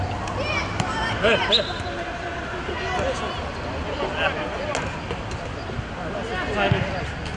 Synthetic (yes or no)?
no